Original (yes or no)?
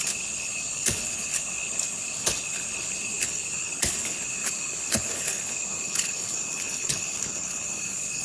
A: no